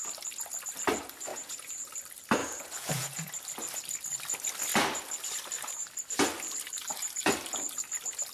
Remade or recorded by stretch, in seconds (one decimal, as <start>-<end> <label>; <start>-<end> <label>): 0.0-1.3 recorded; 1.3-1.9 remade; 1.9-2.4 recorded; 2.4-3.3 remade; 3.3-8.3 recorded